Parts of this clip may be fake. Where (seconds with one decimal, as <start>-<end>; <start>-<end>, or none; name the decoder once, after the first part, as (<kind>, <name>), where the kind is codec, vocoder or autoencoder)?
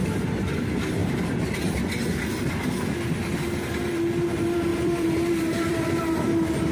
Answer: 1.0-2.1 (vocoder, BigVGAN v2); 4.7-6.0